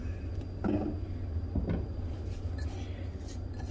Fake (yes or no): no